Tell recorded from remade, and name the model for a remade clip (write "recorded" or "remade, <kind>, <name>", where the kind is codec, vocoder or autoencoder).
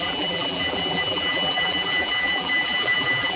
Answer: remade, vocoder, BigVGAN v2